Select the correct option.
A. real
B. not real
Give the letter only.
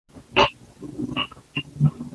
A